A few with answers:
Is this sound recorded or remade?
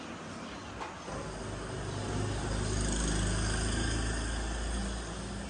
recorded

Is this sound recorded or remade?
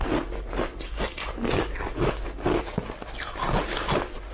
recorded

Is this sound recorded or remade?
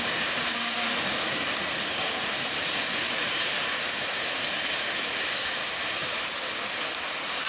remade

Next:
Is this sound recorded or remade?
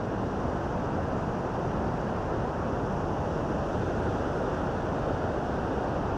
recorded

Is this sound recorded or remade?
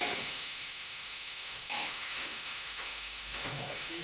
remade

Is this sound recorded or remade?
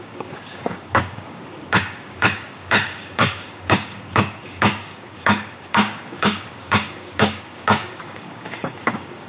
remade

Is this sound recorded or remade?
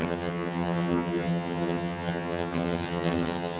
remade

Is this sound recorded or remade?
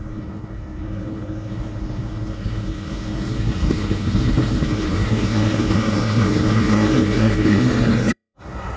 remade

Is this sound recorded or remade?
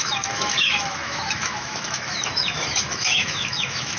remade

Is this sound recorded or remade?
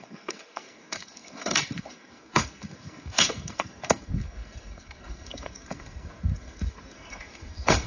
remade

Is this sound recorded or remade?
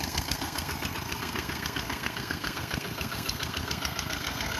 remade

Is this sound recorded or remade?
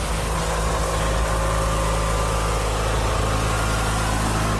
recorded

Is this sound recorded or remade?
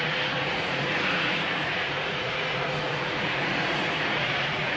remade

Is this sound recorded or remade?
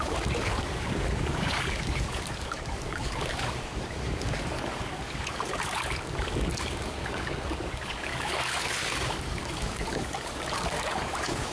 remade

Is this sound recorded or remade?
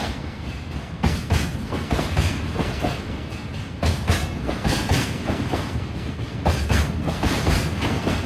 remade